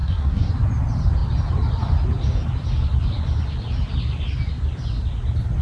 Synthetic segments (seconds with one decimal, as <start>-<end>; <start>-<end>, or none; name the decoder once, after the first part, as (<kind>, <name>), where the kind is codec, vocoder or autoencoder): 0.0-0.5 (codec, SNAC)